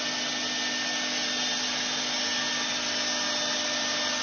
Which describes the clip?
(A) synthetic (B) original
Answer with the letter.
B